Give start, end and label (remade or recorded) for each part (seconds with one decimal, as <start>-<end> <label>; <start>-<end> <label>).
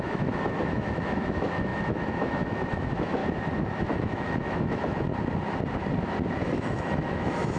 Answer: 0.0-3.2 remade; 3.2-3.8 recorded; 3.8-5.1 remade; 5.1-6.4 recorded; 6.4-7.6 remade